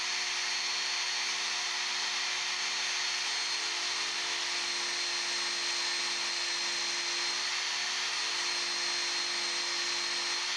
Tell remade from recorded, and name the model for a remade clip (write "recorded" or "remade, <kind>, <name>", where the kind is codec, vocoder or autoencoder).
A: recorded